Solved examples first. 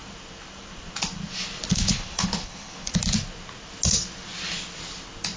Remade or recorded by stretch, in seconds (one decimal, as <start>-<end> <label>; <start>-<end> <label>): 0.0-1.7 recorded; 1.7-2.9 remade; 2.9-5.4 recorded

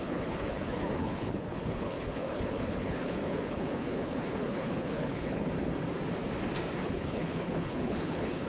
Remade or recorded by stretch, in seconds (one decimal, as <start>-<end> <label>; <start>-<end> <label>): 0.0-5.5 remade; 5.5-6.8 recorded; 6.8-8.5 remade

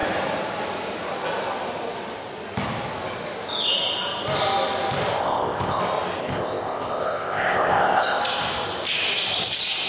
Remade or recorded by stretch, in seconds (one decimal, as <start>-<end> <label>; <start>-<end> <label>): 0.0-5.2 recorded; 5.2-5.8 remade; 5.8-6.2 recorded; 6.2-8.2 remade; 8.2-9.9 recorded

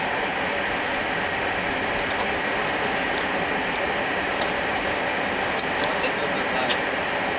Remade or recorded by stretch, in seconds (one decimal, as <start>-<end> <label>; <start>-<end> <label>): 0.0-7.4 recorded

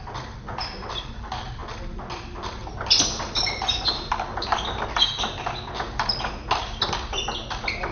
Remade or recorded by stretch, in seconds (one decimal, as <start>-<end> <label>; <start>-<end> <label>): 0.0-7.9 recorded

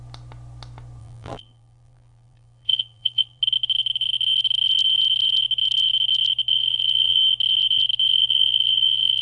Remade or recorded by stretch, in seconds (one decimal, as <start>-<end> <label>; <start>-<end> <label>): 0.0-1.0 recorded; 1.0-3.4 remade; 3.4-6.5 recorded; 6.5-7.2 remade; 7.2-8.1 recorded; 8.1-9.2 remade

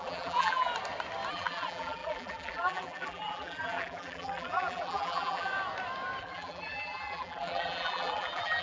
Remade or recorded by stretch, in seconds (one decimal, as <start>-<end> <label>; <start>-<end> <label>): 0.0-0.7 remade; 0.7-1.3 recorded; 1.3-5.5 remade; 5.5-6.2 recorded; 6.2-8.6 remade

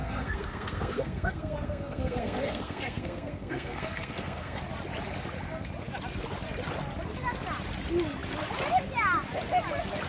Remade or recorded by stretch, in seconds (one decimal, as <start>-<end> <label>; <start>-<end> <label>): 0.0-4.6 remade; 4.6-10.1 recorded